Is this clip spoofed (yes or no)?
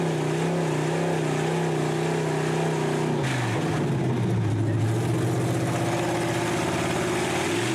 no